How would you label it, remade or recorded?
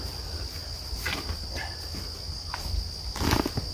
recorded